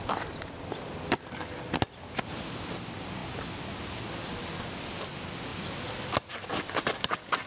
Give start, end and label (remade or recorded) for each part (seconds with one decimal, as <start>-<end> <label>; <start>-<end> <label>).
0.0-7.5 recorded